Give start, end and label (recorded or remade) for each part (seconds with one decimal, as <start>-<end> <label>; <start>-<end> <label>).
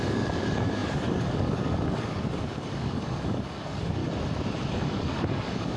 0.0-4.0 remade; 4.0-4.7 recorded; 4.7-5.8 remade